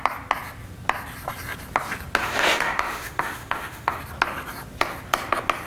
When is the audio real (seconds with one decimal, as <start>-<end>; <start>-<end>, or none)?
0.0-2.2; 4.0-5.7